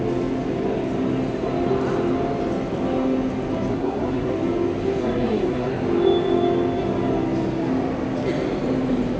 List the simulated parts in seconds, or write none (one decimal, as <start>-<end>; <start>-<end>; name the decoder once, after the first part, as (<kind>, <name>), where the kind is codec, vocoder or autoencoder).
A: 3.7-4.3 (codec, SNAC); 5.0-5.7